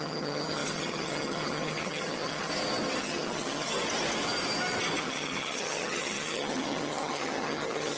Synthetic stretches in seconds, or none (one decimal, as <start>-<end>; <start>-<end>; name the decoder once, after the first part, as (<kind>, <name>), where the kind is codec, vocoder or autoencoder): 0.0-2.5 (vocoder, HiFi-GAN); 3.0-3.7; 5.0-8.0

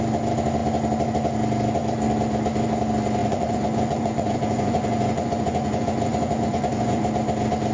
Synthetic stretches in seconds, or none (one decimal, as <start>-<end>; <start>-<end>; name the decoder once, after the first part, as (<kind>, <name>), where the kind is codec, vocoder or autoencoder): 3.2-7.0 (vocoder, Vocos)

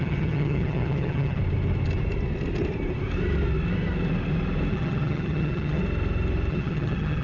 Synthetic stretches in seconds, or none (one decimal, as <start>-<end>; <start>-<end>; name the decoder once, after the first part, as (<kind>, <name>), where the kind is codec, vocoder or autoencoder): 0.0-1.4 (vocoder, HiFi-GAN); 4.7-5.8; 6.5-7.2

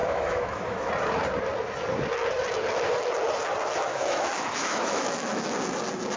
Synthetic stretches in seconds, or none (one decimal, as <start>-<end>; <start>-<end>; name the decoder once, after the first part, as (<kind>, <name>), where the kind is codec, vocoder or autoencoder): 0.0-0.9 (autoencoder, DAC-VAE); 3.9-5.5

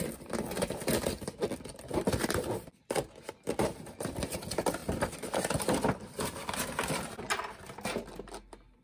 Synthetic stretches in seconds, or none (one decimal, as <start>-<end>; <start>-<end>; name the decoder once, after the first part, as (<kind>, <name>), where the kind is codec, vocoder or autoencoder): none

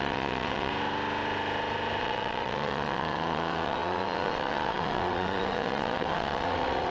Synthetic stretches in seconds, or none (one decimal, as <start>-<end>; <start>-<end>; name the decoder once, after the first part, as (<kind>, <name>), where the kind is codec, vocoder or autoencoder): 0.0-0.7 (vocoder, WaveNeXt); 2.0-6.9